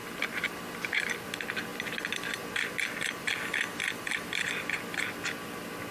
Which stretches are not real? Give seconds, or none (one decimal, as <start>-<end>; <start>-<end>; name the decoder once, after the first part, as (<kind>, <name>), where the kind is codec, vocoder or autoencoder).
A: none